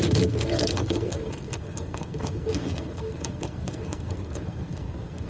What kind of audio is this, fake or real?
fake